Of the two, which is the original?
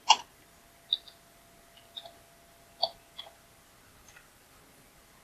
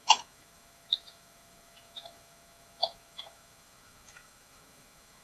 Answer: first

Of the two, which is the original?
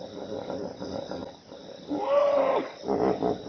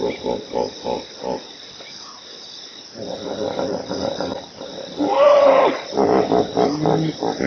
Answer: first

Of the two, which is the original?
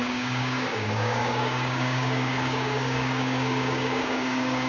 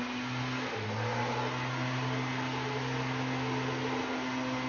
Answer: second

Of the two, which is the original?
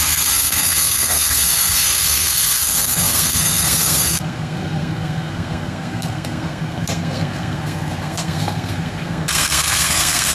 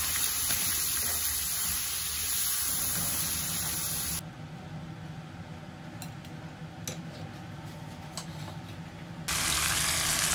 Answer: second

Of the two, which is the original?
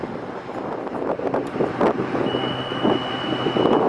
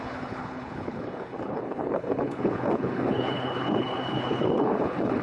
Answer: first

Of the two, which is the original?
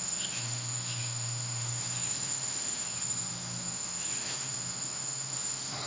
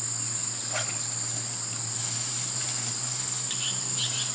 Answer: second